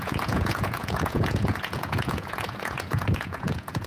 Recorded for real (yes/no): no